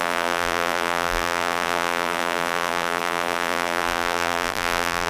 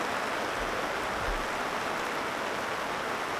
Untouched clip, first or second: second